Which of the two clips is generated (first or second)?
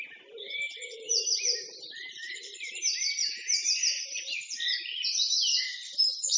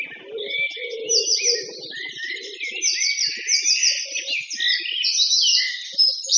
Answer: first